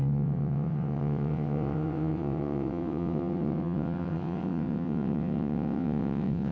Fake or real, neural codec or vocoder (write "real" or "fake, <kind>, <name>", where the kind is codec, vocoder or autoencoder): fake, vocoder, WaveNeXt